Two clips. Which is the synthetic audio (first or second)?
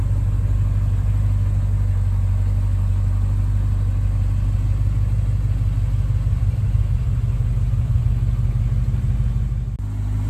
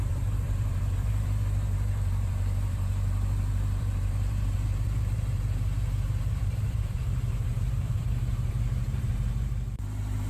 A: second